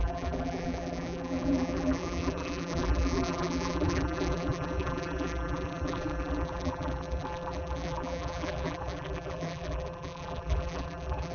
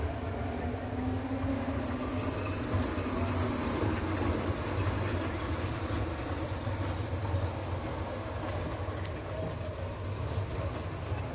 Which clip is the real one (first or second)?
second